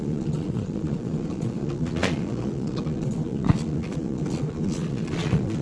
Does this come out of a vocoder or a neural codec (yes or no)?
yes